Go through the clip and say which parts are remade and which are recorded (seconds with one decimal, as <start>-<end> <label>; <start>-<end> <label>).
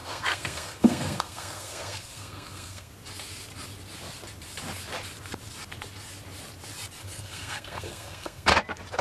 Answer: 0.0-2.9 remade; 2.9-7.0 recorded; 7.0-8.5 remade; 8.5-9.0 recorded